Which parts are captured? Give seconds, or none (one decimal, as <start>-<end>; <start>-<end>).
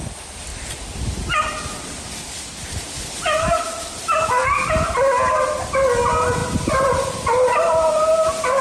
0.0-6.4